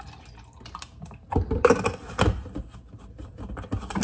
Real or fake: real